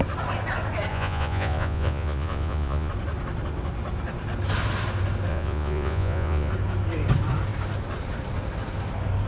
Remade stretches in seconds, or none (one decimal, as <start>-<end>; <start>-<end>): 0.9-2.9; 5.3-6.5